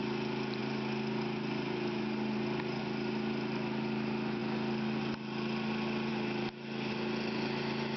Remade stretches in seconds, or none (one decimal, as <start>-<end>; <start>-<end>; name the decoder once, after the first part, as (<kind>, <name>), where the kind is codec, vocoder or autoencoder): none